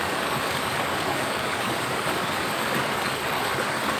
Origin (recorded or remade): remade